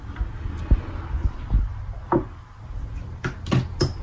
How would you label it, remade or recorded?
recorded